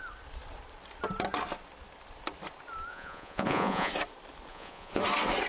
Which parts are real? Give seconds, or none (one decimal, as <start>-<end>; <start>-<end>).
0.0-2.9; 3.9-4.5; 5.0-5.5